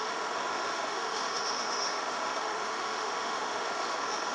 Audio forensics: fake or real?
fake